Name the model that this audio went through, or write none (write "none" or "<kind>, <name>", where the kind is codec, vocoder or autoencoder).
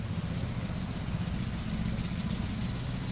none